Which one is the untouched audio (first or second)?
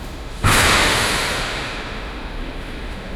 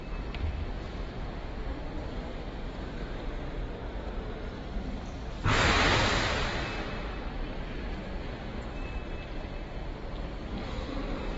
second